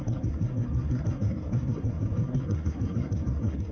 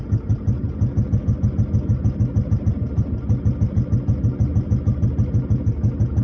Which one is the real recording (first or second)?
second